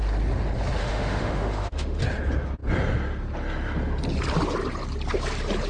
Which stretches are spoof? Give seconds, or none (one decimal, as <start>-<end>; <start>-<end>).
0.8-2.0